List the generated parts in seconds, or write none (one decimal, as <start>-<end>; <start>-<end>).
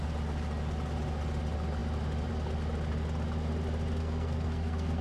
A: 4.0-5.0